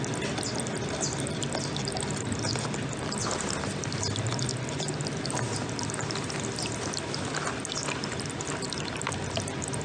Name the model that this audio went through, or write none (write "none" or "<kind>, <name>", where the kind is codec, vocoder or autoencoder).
none